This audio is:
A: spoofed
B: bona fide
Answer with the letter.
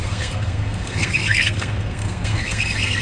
A